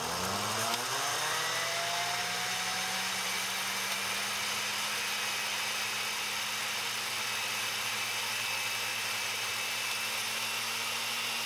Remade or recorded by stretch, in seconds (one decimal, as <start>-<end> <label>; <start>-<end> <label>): 0.0-8.9 recorded; 8.9-9.5 remade; 9.5-11.5 recorded